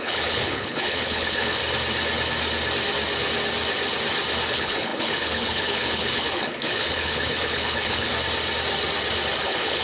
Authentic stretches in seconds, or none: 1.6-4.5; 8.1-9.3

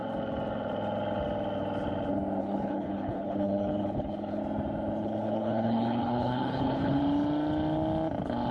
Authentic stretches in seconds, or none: 0.0-2.4; 4.4-5.0; 7.0-8.5

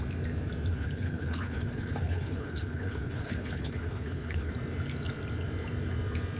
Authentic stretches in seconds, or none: 0.0-0.7; 4.5-6.4